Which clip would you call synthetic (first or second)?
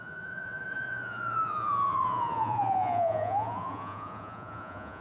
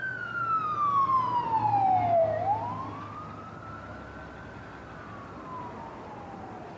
first